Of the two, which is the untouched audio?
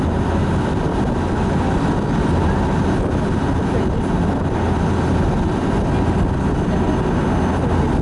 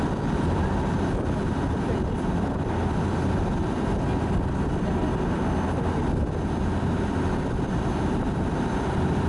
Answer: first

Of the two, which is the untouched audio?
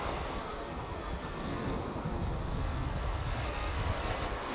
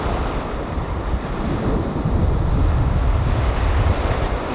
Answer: second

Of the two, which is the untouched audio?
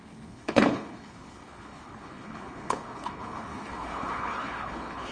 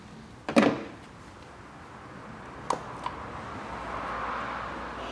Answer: second